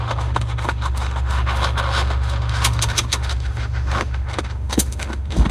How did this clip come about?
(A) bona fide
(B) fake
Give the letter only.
B